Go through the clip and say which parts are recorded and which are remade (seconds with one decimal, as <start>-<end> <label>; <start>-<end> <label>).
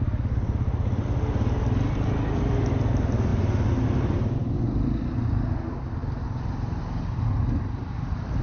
0.0-8.4 recorded